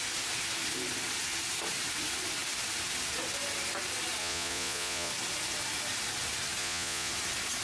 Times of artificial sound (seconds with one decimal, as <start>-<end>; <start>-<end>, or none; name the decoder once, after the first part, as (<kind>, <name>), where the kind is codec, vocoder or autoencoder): 4.2-5.1 (vocoder, Vocos); 6.6-7.1